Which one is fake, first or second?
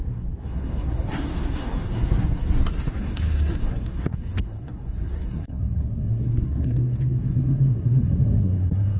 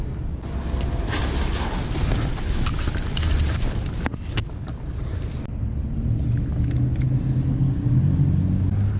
first